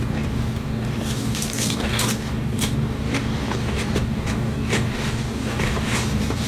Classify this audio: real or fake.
fake